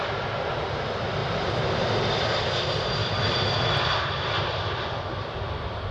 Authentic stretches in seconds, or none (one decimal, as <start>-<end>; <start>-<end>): 0.0-1.2; 2.1-3.0; 4.7-5.9